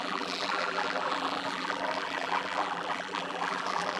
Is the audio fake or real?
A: fake